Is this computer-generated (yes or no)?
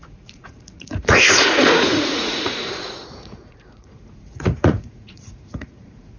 yes